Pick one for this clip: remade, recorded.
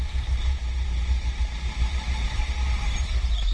remade